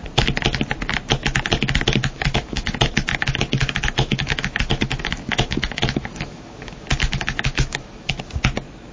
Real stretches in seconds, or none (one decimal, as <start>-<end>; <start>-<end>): 0.0-2.0; 2.7-3.1; 8.1-8.9